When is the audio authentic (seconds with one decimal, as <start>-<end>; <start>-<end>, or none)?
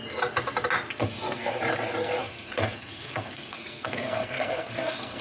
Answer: 0.0-1.0; 1.6-2.0